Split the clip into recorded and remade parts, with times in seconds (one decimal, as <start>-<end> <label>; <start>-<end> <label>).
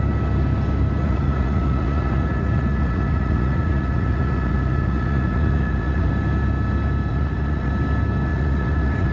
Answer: 0.0-1.0 recorded; 1.0-6.1 remade; 6.1-7.1 recorded; 7.1-7.7 remade; 7.7-8.3 recorded; 8.3-9.1 remade